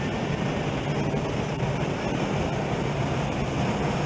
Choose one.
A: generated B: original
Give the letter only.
B